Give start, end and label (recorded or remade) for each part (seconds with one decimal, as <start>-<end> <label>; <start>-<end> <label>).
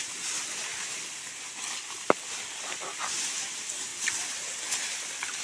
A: 0.0-5.4 recorded